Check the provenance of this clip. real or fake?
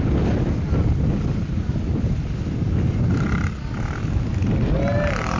real